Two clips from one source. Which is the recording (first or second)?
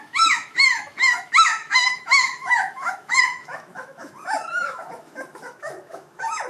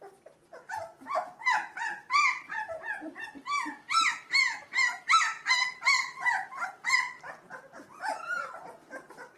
second